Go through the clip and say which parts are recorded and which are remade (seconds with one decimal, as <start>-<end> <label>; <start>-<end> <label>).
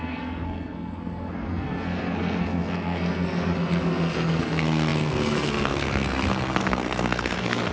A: 0.0-7.7 remade